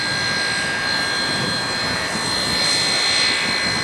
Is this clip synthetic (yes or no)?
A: no